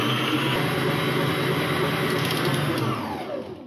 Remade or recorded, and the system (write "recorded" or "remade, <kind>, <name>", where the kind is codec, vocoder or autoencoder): recorded